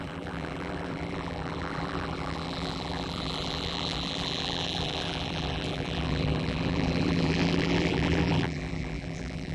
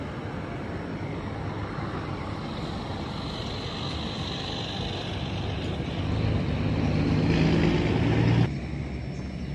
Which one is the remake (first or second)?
first